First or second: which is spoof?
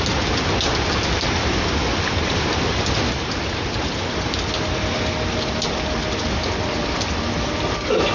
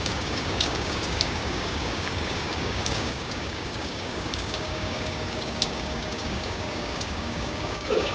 second